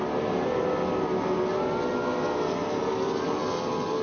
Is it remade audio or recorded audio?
recorded